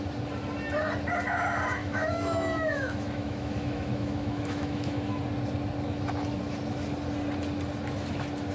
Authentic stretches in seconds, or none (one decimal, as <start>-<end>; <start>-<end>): 0.0-1.8; 5.2-8.5